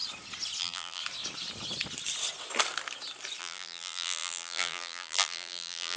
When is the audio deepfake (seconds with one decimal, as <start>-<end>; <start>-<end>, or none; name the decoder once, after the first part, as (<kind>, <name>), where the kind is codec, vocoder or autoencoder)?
0.6-1.0 (vocoder, BigVGAN v2); 3.4-6.0